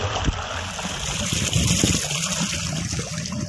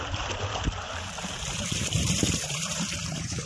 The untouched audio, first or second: first